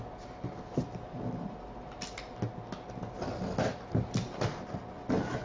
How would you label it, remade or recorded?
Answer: recorded